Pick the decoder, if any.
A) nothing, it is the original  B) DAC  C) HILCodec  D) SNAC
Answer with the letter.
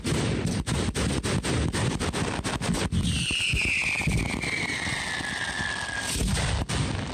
A